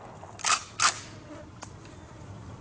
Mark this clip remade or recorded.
recorded